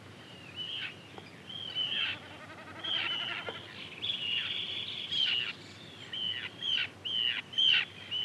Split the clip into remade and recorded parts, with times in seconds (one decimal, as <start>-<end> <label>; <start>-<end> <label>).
0.0-8.2 recorded